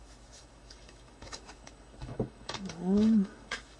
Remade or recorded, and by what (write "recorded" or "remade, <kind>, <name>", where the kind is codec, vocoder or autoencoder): remade, autoencoder, DAC-VAE